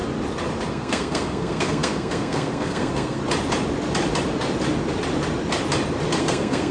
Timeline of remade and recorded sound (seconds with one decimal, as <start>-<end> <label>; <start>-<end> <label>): 0.0-0.7 recorded; 0.7-3.2 remade; 3.2-6.2 recorded; 6.2-6.7 remade